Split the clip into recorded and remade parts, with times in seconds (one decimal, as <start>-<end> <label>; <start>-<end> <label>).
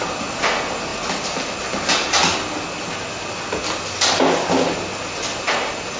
0.0-6.0 recorded